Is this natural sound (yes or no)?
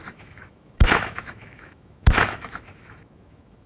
no